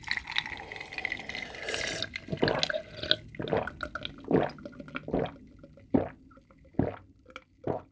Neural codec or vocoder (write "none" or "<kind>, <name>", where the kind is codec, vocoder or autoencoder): none